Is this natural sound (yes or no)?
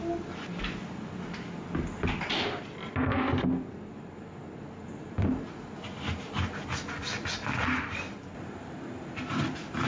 yes